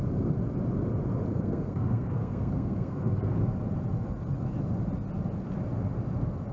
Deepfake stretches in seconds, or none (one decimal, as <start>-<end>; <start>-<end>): 1.3-3.4